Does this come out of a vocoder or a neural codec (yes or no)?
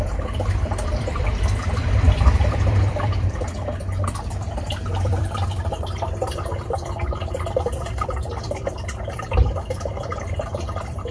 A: yes